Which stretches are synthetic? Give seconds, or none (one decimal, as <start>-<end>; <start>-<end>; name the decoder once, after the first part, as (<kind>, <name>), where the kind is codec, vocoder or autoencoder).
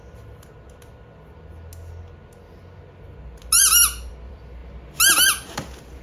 0.0-0.5 (vocoder, BigVGAN v2); 4.1-4.6; 5.1-6.0